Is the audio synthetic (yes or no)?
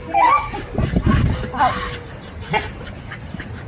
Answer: no